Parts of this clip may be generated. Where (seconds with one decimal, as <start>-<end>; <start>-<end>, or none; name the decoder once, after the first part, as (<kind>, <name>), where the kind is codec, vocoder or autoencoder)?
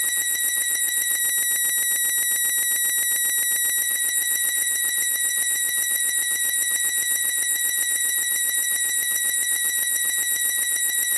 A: 0.0-1.2 (autoencoder, DAC-VAE); 3.8-11.2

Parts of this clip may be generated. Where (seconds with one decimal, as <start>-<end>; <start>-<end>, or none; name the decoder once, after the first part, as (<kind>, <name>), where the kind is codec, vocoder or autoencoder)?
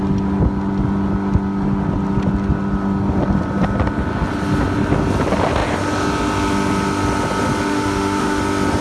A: 7.7-8.4 (autoencoder, DAC-VAE)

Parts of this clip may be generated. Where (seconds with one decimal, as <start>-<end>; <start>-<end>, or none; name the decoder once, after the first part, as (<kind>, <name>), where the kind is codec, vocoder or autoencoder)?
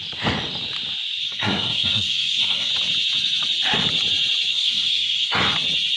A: 1.2-2.7 (codec, SNAC); 4.5-5.4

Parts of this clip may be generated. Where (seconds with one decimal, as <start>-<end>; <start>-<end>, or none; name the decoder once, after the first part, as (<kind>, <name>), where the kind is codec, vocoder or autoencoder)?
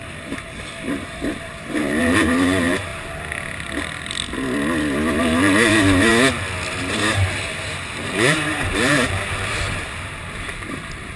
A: 0.0-2.9 (vocoder, BigVGAN v2); 5.2-6.1; 6.8-11.2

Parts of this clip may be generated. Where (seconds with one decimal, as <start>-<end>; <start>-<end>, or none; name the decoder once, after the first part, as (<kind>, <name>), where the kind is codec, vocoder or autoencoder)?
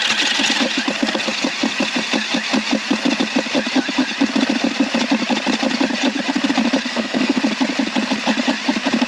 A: 6.9-7.4 (codec, SNAC)